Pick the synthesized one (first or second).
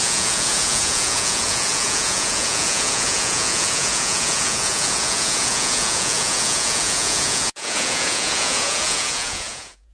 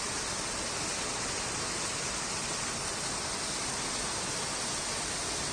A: first